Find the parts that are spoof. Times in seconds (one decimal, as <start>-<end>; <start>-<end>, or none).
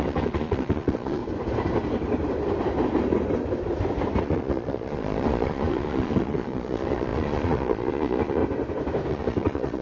0.0-1.2; 4.2-8.4; 9.1-9.8